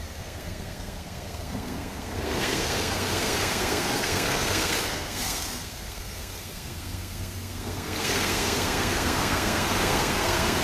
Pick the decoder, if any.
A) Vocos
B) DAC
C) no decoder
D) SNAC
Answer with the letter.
D